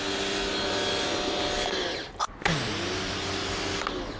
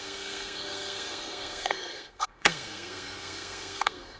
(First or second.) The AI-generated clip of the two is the second